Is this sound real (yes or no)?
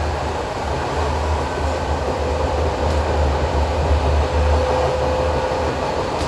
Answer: yes